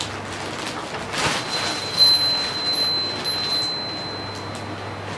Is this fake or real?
real